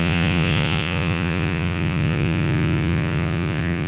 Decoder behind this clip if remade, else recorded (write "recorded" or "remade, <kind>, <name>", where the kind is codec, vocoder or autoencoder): remade, vocoder, Vocos